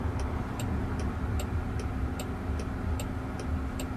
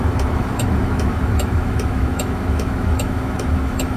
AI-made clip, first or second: second